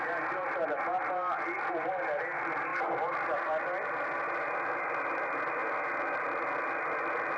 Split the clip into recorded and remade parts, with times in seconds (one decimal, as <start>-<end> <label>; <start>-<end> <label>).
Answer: 0.0-7.4 recorded